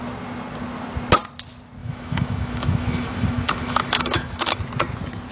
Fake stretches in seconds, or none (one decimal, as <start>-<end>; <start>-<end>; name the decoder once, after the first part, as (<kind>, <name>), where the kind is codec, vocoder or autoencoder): 1.8-4.6 (autoencoder, DAC-VAE)